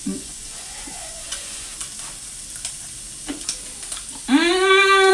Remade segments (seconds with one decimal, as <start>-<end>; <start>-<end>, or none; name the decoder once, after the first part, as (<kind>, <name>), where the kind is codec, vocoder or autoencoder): 0.0-1.7 (vocoder, Vocos)